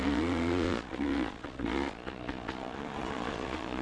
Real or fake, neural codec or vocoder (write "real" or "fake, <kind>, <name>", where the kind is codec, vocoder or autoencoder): fake, vocoder, Vocos